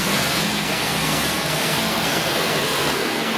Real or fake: fake